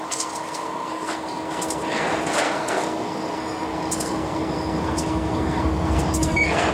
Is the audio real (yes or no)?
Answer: no